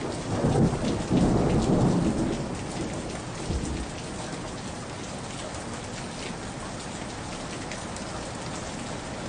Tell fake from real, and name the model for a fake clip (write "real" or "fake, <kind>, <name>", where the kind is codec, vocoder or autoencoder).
real